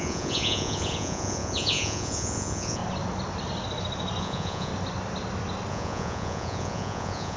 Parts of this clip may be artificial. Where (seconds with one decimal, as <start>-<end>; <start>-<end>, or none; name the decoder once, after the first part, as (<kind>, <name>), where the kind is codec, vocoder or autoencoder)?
0.0-2.8 (vocoder, Vocos); 4.2-4.7; 5.7-7.4